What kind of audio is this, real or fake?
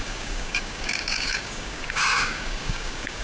fake